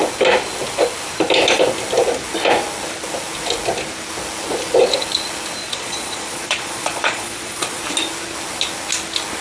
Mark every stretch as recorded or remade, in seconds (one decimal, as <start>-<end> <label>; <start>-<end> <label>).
0.0-5.6 recorded; 5.6-7.8 remade; 7.8-9.4 recorded